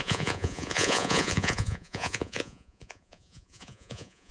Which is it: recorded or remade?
remade